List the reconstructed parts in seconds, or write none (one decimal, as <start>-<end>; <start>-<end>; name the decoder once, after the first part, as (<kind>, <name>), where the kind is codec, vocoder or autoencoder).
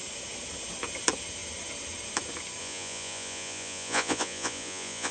2.6-5.1 (vocoder, Vocos)